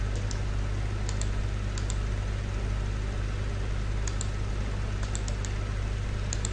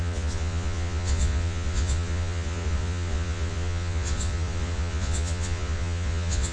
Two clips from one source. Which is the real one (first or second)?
first